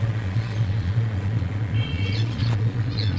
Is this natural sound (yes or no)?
no